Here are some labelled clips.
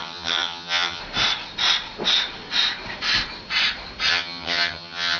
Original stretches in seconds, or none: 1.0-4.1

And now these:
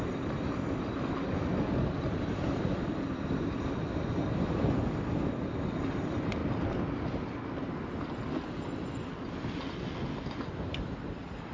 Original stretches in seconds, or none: 0.0-11.5